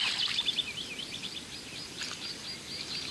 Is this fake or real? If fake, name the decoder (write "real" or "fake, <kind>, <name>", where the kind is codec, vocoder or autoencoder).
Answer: real